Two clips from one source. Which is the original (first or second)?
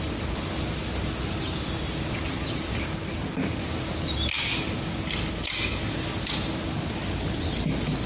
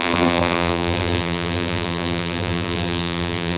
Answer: first